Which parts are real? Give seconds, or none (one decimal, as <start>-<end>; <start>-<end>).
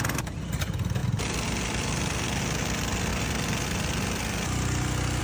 0.0-5.2